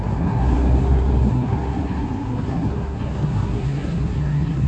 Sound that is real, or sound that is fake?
fake